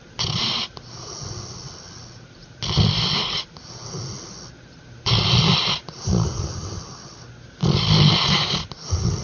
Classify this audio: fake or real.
real